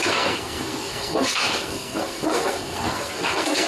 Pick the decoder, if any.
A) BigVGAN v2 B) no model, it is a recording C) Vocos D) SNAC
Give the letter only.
D